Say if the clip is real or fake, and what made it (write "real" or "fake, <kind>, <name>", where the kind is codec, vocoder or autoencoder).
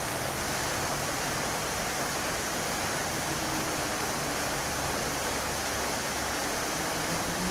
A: real